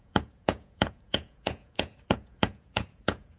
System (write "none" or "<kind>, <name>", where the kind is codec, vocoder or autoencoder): vocoder, Vocos